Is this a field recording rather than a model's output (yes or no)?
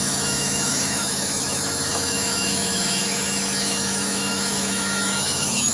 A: no